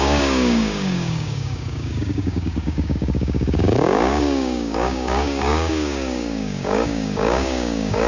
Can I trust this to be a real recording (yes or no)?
no